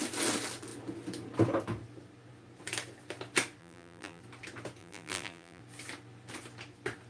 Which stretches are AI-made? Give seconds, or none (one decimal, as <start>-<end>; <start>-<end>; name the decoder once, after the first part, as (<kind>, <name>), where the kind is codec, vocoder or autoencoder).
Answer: 3.6-4.2 (vocoder, BigVGAN v2); 4.8-5.6

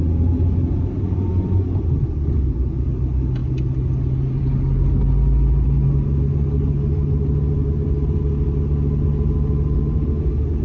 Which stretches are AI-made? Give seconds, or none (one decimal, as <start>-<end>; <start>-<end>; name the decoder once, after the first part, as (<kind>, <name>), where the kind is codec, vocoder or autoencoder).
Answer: none